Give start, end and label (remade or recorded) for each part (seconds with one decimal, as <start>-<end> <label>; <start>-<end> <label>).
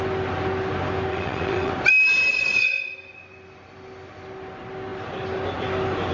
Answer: 0.0-1.1 recorded; 1.1-1.7 remade; 1.7-2.3 recorded; 2.3-2.9 remade; 2.9-6.1 recorded